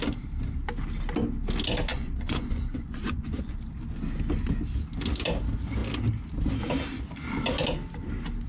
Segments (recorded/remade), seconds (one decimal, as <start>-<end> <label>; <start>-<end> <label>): 0.0-1.9 recorded; 1.9-3.5 remade; 3.5-8.5 recorded